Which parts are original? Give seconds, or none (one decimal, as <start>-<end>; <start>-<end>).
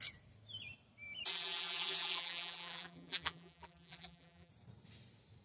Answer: 0.0-1.3; 4.5-5.4